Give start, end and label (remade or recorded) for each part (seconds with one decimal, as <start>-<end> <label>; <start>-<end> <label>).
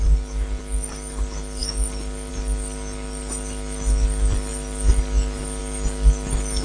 0.0-6.6 recorded